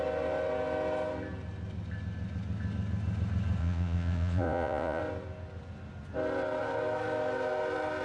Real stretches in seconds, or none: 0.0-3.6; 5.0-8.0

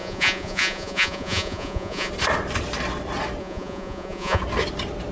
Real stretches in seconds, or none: 2.1-3.4; 4.4-5.1

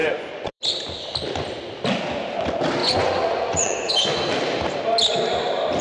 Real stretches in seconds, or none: 0.6-2.8; 3.9-5.8